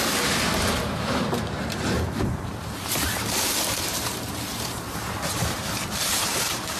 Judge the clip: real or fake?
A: fake